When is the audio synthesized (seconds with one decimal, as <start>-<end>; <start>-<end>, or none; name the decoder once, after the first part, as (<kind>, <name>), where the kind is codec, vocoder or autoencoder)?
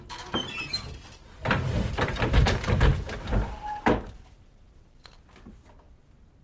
1.2-5.0 (vocoder, BigVGAN v2)